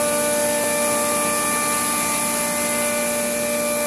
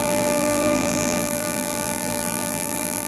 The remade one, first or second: second